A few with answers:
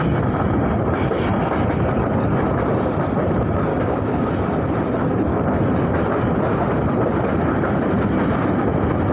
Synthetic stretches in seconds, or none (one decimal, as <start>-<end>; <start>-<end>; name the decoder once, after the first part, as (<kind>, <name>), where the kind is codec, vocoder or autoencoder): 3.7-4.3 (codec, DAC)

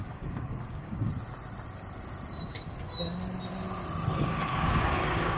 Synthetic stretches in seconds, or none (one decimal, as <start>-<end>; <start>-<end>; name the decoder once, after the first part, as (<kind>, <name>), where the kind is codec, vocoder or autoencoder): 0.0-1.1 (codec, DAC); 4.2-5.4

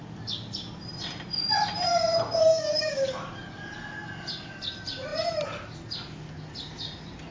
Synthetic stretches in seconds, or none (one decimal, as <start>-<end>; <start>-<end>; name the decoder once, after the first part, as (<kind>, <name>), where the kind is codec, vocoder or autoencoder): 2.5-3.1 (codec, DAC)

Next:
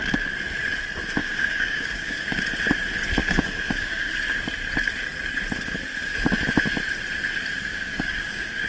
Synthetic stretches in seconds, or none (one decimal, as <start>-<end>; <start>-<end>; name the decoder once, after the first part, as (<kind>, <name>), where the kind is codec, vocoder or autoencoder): 1.2-2.4 (codec, DAC); 3.2-4.1; 7.7-8.7

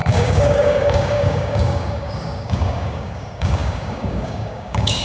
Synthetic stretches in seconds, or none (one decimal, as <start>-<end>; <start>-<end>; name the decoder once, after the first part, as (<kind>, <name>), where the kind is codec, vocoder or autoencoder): 0.0-5.0 (codec, DAC)

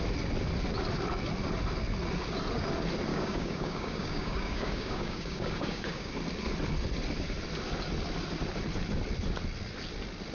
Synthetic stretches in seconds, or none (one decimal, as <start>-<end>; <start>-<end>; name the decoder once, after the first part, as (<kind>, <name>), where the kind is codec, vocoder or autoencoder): 3.1-6.1 (codec, DAC)